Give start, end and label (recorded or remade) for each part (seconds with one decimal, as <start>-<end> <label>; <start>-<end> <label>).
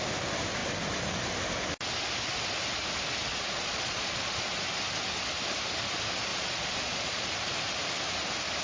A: 0.0-3.3 recorded; 3.3-4.5 remade; 4.5-6.3 recorded; 6.3-7.3 remade; 7.3-8.6 recorded